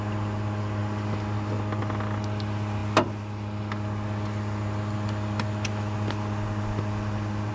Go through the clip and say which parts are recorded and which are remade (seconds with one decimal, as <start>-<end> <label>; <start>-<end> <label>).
0.0-7.5 recorded